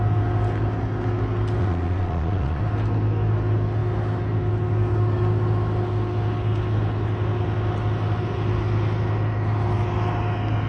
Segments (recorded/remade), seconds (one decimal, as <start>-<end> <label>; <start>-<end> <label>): 0.0-1.6 recorded; 1.6-2.6 remade; 2.6-10.7 recorded